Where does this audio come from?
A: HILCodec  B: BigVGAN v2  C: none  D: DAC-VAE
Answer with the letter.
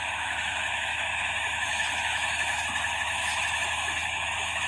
D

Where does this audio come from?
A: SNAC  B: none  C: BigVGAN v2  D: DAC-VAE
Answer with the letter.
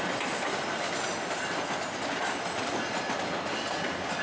B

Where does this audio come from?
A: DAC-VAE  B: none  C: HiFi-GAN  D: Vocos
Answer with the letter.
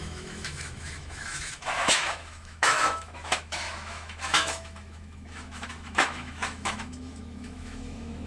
A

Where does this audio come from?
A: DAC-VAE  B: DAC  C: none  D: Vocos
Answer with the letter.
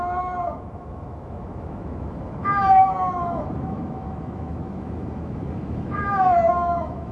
A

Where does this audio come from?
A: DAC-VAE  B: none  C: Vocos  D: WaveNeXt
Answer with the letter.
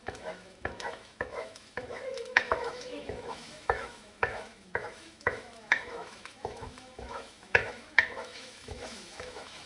A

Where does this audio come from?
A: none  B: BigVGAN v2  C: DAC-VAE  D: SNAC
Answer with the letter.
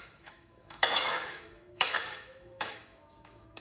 C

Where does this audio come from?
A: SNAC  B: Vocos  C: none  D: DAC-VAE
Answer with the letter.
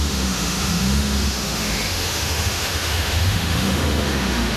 D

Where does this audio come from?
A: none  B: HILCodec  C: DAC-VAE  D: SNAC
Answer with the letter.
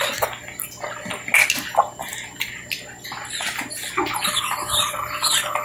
A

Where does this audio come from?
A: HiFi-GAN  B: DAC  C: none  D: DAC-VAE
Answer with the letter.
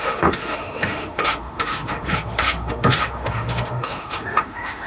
D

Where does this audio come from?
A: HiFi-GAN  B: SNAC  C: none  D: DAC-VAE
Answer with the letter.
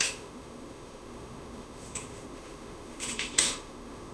D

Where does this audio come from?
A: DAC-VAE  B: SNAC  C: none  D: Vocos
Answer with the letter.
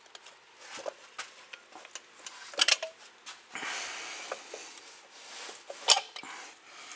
C